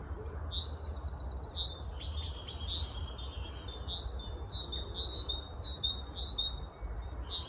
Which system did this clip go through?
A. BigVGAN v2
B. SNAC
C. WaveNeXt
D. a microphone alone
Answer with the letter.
D